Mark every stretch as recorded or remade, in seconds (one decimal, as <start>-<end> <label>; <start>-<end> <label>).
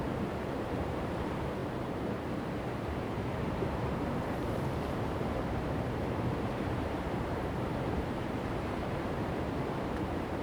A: 0.0-10.4 remade